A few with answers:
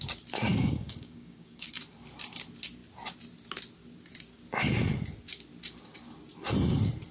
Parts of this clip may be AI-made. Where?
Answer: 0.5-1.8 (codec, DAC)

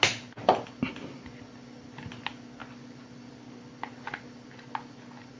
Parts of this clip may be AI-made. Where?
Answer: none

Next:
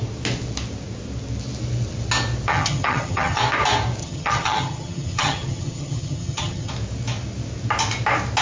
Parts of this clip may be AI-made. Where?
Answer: 2.5-3.4 (vocoder, HiFi-GAN); 4.0-6.7